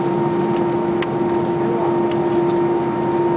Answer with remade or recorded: recorded